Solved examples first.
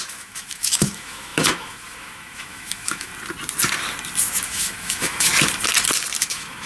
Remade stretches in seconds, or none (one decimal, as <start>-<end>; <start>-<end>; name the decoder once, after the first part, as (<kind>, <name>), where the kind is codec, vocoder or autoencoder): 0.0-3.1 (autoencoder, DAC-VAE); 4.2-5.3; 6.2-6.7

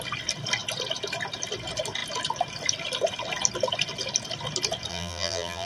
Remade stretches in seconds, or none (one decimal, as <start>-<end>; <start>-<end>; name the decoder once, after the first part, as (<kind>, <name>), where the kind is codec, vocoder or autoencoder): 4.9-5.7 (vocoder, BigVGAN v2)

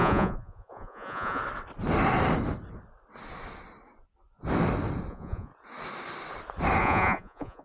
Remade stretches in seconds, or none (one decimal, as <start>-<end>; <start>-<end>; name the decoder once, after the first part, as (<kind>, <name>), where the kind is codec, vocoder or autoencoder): 0.0-1.4 (vocoder, Vocos); 5.1-5.5; 6.8-7.6